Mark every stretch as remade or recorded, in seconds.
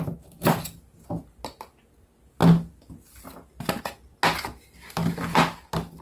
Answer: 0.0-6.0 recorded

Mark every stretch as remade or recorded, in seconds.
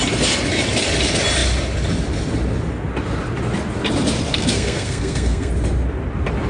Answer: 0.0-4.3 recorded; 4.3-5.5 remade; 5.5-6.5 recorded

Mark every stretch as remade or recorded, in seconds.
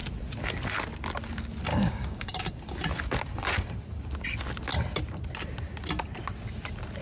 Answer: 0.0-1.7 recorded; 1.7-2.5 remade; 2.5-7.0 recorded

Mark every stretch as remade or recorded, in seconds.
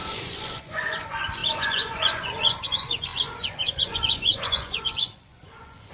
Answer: 0.0-5.9 remade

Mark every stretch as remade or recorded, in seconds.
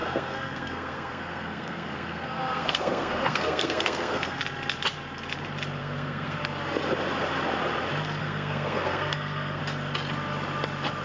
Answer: 0.0-4.4 remade; 4.4-5.8 recorded; 5.8-6.4 remade; 6.4-8.2 recorded; 8.2-9.6 remade; 9.6-11.0 recorded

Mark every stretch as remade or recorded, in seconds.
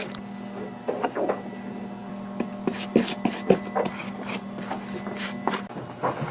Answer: 0.0-6.3 recorded